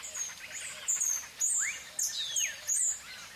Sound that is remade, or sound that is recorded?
recorded